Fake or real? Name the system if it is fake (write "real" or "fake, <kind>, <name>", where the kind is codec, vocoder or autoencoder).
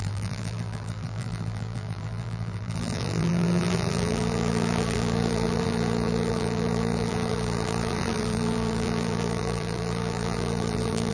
fake, vocoder, BigVGAN v2